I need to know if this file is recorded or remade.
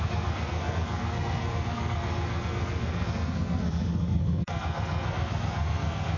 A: remade